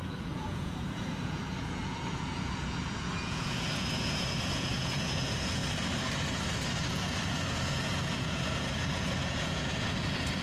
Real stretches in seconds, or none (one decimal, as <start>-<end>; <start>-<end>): 5.6-6.9